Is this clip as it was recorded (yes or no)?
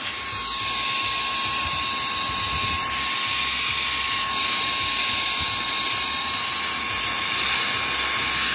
yes